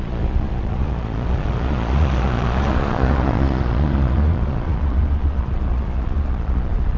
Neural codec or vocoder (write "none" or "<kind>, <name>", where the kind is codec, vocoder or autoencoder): vocoder, Vocos